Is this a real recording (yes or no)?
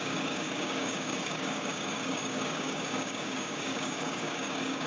no